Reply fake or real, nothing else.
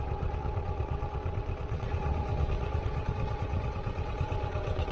fake